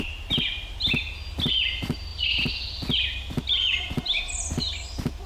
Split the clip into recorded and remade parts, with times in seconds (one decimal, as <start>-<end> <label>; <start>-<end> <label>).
0.0-5.3 recorded